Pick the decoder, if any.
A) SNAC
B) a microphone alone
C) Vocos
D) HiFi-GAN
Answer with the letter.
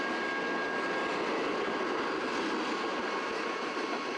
B